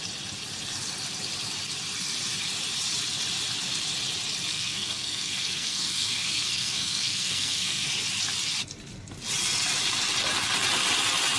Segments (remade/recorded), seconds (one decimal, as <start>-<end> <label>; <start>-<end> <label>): 0.0-4.5 recorded; 4.5-7.9 remade; 7.9-11.4 recorded